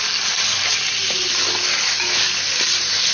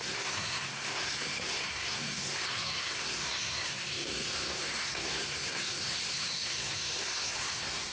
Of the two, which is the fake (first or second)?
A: second